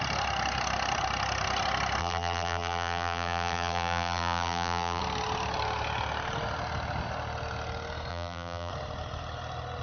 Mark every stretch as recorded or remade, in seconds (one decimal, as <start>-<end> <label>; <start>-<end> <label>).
0.0-2.0 recorded; 2.0-5.0 remade; 5.0-8.1 recorded; 8.1-8.7 remade; 8.7-9.8 recorded